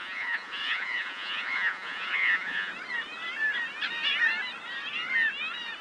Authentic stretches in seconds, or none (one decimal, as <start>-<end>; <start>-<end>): 2.7-5.8